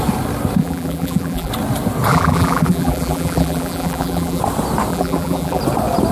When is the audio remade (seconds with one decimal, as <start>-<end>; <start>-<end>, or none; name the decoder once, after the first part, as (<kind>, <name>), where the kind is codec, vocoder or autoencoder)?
0.6-1.5 (vocoder, BigVGAN v2); 2.1-4.4; 4.9-5.6